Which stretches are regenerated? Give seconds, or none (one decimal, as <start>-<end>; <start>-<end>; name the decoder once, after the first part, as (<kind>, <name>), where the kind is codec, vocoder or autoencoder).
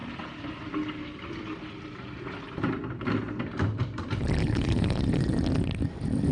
4.4-5.0 (codec, HILCodec)